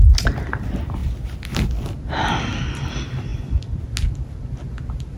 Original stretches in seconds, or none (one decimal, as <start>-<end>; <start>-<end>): 0.0-5.2